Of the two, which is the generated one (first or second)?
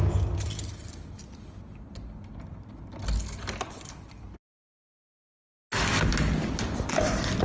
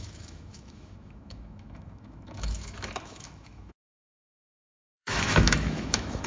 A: second